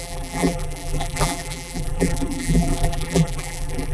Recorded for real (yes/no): no